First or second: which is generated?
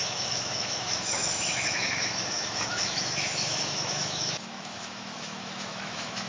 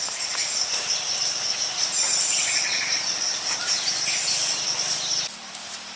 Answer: first